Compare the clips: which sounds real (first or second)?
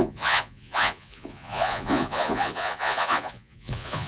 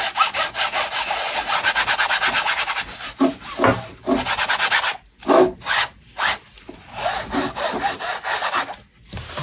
second